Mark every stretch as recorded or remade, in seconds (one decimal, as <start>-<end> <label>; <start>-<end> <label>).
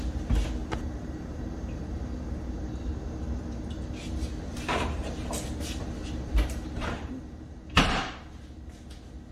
0.0-0.6 recorded; 0.6-3.7 remade; 3.7-4.5 recorded; 4.5-5.1 remade; 5.1-6.0 recorded; 6.0-8.1 remade; 8.1-9.3 recorded